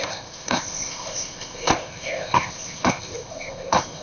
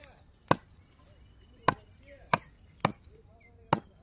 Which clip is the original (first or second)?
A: second